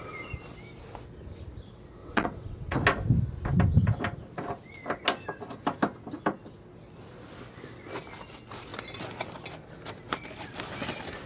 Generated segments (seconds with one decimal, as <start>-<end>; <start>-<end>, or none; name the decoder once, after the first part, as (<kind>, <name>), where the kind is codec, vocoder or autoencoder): 2.0-2.8 (vocoder, WaveNeXt)